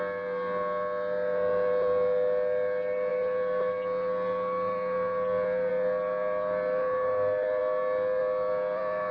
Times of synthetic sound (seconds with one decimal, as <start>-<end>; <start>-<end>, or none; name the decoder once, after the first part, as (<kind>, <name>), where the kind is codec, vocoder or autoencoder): none